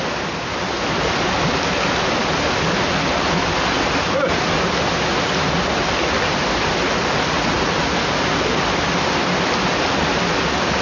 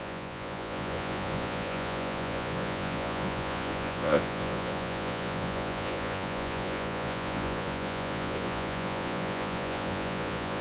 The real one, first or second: first